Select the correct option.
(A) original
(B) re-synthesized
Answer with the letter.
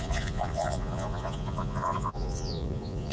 B